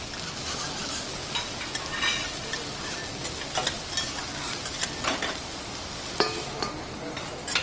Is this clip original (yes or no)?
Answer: yes